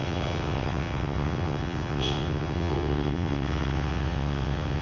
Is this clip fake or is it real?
fake